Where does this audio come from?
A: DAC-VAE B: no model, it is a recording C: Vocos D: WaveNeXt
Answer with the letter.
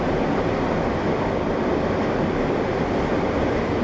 B